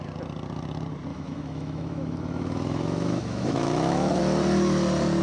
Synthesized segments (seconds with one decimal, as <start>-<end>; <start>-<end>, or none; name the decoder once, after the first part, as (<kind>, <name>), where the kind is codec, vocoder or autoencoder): 1.1-4.2 (autoencoder, DAC-VAE)